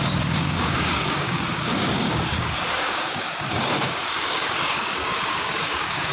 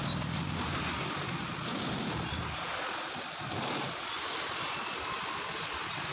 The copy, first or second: first